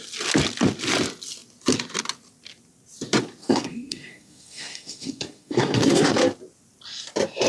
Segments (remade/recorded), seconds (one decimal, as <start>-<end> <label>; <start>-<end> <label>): 0.0-3.4 recorded; 3.4-6.1 remade; 6.1-7.5 recorded